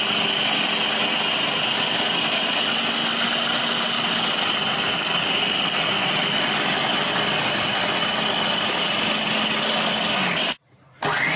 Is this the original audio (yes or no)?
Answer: yes